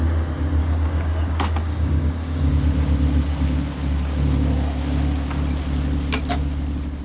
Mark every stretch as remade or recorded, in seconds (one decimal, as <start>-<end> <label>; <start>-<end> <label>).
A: 0.0-0.6 recorded; 0.6-2.5 remade; 2.5-7.0 recorded